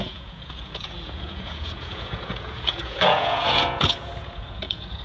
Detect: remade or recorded remade